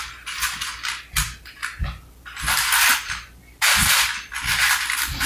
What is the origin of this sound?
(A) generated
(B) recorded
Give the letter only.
B